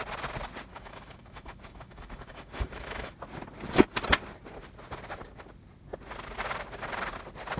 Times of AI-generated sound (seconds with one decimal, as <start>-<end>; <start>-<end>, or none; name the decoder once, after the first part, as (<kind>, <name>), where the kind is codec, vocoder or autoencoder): 0.7-3.1 (autoencoder, DAC-VAE)